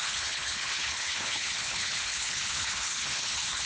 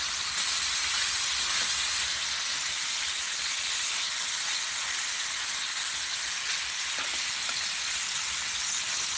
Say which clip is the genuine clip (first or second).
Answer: second